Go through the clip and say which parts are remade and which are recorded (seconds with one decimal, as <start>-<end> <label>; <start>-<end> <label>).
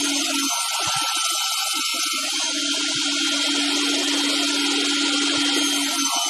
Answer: 0.0-6.3 recorded